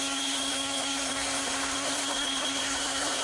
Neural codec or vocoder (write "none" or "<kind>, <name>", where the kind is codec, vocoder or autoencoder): codec, SNAC